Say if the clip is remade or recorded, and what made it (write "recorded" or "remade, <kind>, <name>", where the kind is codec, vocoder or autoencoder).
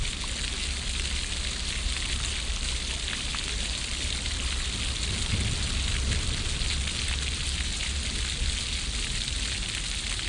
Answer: recorded